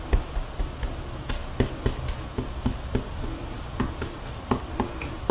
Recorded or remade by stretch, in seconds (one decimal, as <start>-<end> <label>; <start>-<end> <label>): 0.0-5.3 recorded